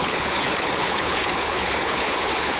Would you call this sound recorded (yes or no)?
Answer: no